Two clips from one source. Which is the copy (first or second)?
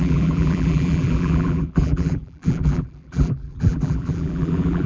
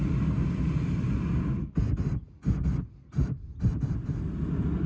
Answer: first